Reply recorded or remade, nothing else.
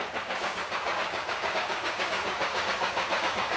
remade